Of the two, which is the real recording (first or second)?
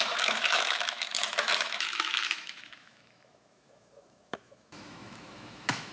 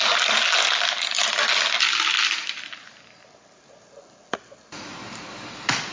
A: second